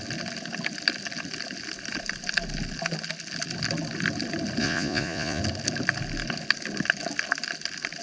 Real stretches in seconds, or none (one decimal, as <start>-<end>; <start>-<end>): 0.0-4.6; 5.4-8.0